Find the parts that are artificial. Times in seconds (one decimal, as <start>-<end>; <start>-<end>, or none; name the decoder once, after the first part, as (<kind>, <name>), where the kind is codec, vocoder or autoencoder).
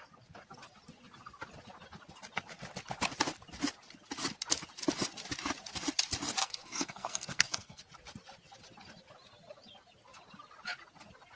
6.4-7.8 (codec, SNAC)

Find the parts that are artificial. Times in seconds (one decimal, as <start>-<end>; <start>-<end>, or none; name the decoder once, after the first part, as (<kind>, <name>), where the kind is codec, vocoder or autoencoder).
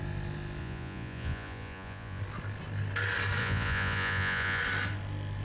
0.6-2.2 (vocoder, Vocos); 3.4-4.6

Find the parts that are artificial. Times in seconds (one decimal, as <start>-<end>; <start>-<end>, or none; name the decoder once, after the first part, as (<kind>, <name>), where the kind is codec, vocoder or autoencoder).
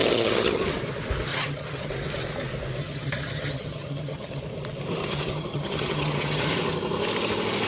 0.0-0.6 (vocoder, HiFi-GAN); 1.3-1.9; 2.8-4.4; 5.0-6.5